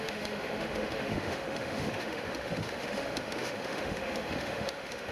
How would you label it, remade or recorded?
remade